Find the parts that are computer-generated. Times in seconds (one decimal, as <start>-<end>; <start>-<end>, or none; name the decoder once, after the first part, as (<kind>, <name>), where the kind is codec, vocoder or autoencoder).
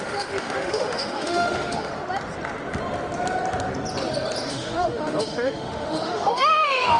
0.0-1.9 (autoencoder, DAC-VAE); 4.5-7.0